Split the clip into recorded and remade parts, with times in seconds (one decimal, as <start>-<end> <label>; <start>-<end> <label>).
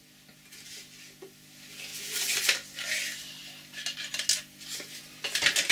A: 0.0-5.7 recorded